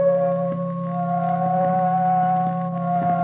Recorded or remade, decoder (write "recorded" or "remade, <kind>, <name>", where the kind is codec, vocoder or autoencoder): recorded